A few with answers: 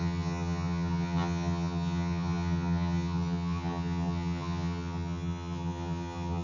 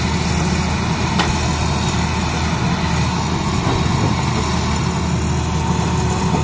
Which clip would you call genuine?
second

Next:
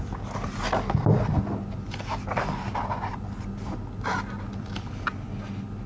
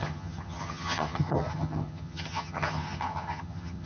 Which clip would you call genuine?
first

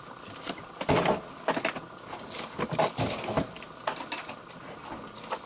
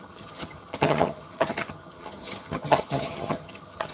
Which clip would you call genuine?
first